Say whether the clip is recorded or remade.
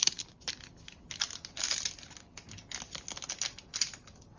recorded